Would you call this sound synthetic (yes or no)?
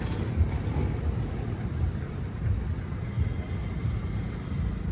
no